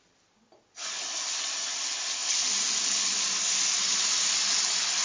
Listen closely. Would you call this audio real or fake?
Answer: real